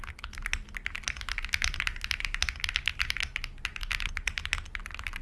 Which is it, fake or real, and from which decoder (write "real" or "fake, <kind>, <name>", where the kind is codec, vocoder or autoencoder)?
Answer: real